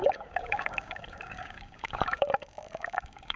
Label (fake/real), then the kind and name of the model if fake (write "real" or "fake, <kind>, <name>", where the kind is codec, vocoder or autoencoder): fake, codec, DAC